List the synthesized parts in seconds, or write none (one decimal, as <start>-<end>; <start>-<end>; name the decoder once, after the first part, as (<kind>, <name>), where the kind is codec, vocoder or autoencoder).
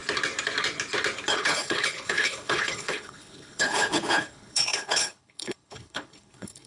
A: 1.3-6.7 (codec, HILCodec)